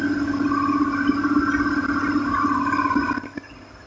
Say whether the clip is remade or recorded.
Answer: recorded